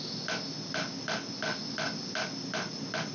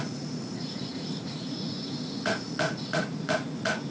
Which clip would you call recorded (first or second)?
first